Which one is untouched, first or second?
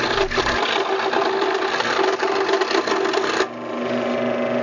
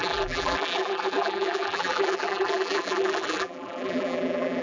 first